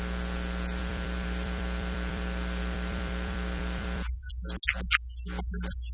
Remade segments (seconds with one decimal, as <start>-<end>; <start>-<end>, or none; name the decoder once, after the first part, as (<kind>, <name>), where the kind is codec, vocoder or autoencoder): 0.8-4.3 (vocoder, BigVGAN v2)